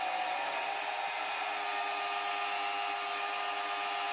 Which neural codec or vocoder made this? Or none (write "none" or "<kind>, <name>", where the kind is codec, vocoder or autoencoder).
none